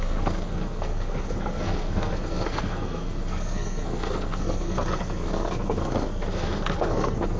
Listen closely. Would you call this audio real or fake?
fake